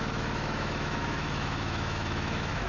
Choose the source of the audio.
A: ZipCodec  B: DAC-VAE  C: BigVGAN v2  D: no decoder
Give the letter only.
B